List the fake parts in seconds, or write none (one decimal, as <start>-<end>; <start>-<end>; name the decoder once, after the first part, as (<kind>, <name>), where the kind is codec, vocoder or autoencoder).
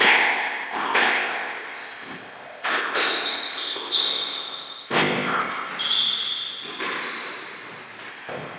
0.0-5.7 (codec, ZipCodec); 8.1-8.6